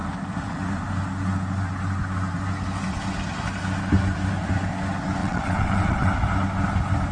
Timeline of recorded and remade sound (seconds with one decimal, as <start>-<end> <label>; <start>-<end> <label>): 0.0-5.2 recorded; 5.2-6.1 remade; 6.1-7.1 recorded